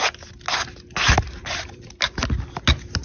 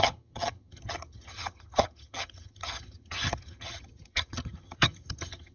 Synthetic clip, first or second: second